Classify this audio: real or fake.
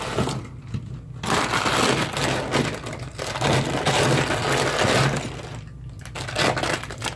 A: real